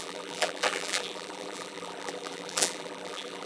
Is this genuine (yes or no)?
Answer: no